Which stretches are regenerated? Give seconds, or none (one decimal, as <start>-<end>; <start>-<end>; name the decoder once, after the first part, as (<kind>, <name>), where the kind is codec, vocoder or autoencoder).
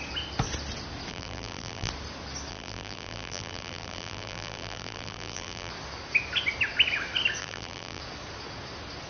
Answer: 1.1-1.9 (vocoder, BigVGAN v2); 2.5-5.7; 7.4-8.0